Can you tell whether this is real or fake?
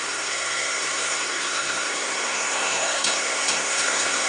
fake